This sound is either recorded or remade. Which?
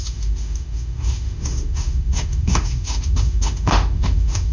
remade